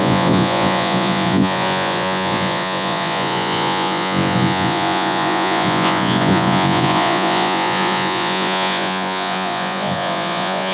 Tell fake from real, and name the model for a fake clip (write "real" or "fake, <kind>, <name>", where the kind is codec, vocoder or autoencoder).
fake, vocoder, Vocos